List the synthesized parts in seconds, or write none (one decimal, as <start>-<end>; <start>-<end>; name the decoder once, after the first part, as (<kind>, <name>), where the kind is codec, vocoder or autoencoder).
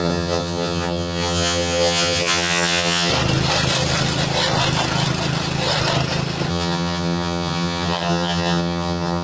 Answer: 0.0-3.1 (vocoder, HiFi-GAN); 6.5-9.2